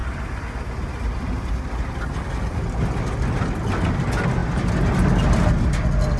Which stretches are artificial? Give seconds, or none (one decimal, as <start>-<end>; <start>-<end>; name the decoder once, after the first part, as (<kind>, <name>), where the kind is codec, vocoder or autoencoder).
none